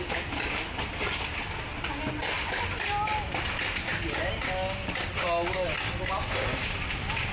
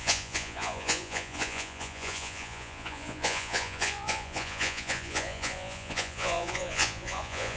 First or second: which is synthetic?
second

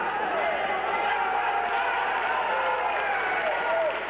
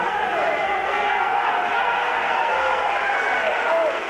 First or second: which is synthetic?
second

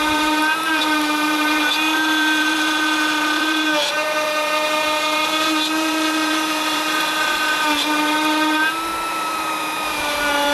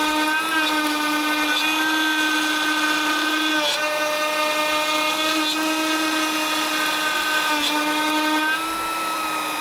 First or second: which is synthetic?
first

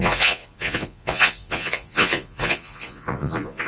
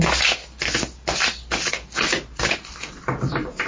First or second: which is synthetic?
first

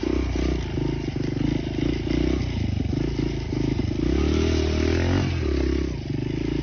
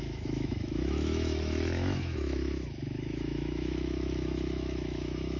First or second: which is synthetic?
second